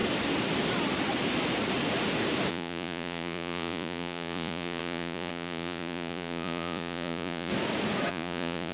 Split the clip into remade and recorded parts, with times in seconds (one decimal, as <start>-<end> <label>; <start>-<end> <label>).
0.0-2.5 recorded; 2.5-7.5 remade; 7.5-8.1 recorded; 8.1-8.7 remade